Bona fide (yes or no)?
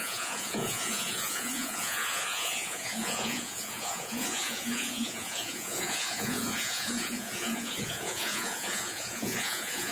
no